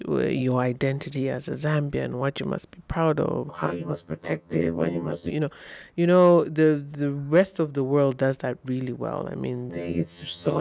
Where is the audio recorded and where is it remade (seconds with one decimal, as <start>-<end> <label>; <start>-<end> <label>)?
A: 0.0-3.5 recorded; 3.5-5.3 remade; 5.3-9.7 recorded; 9.7-10.6 remade